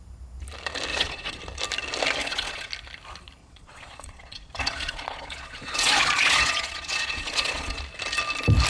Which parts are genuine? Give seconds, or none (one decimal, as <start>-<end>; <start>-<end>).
0.0-0.9; 1.4-2.2; 2.7-3.4; 7.8-8.7